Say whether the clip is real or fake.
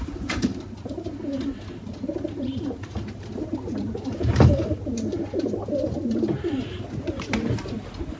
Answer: fake